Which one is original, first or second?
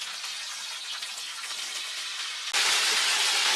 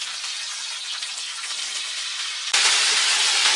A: first